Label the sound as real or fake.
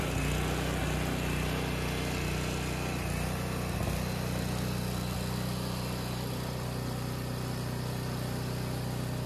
real